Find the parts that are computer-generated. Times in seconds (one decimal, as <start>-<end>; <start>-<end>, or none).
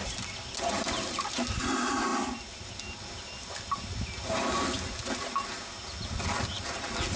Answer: none